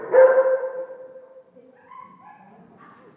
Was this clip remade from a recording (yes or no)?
no